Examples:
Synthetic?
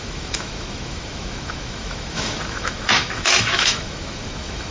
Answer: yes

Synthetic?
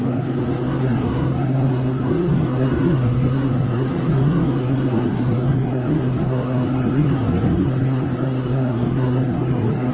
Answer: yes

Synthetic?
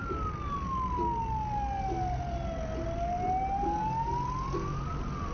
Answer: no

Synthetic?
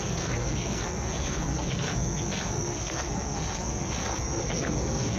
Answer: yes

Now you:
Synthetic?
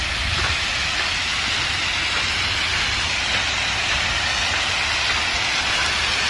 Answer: no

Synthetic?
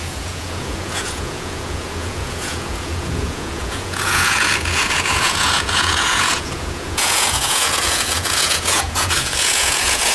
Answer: yes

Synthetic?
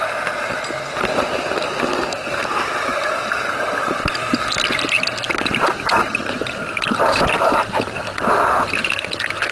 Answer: no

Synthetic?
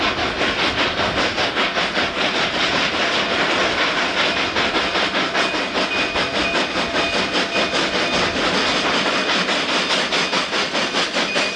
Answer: no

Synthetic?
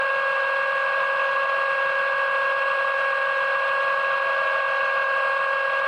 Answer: no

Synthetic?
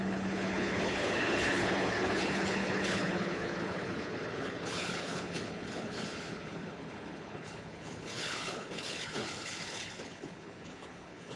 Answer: yes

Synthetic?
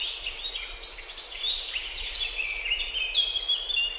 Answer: no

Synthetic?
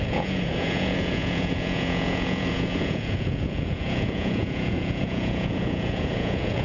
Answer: yes